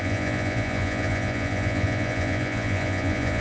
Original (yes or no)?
no